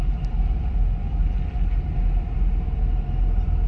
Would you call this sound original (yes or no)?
yes